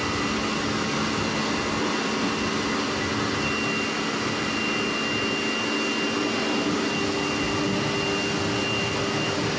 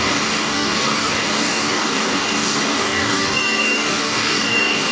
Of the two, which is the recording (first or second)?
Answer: first